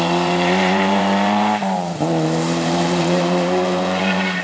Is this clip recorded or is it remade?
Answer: remade